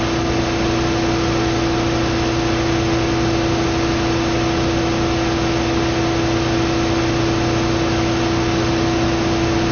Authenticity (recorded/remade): recorded